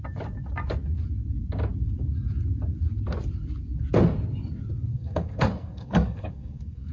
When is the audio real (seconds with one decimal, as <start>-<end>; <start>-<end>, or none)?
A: 0.0-4.9